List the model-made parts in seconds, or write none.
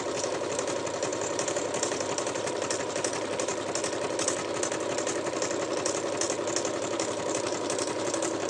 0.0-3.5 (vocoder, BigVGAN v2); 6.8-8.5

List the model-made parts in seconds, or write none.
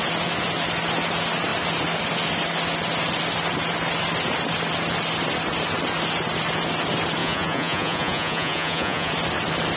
7.2-9.1 (vocoder, Vocos)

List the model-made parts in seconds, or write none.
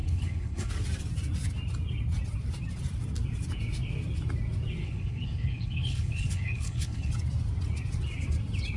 0.0-0.7 (codec, HILCodec); 4.8-7.1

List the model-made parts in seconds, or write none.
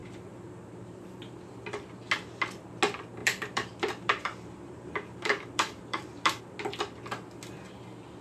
0.0-1.5 (vocoder, BigVGAN v2); 3.2-6.4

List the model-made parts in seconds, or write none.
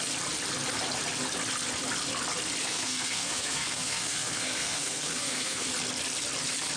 2.6-5.7 (codec, SNAC)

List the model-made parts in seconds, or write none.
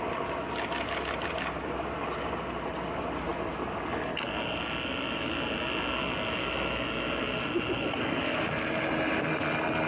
none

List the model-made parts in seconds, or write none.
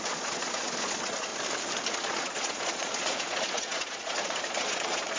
0.0-1.3 (vocoder, Vocos); 2.0-5.2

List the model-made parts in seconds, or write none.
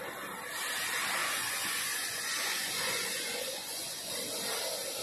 1.2-4.2 (vocoder, Vocos)